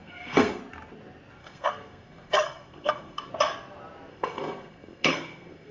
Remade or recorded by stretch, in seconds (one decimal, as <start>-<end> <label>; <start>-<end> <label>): 0.0-0.6 remade; 0.6-1.4 recorded; 1.4-3.3 remade; 3.3-4.1 recorded; 4.1-5.7 remade